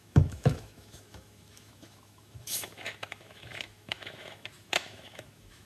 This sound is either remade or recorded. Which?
remade